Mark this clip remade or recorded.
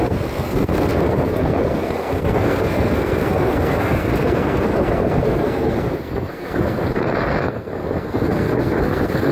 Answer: remade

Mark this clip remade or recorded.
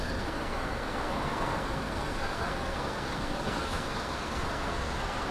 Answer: remade